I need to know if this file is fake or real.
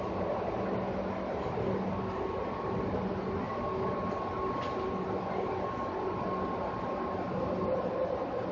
real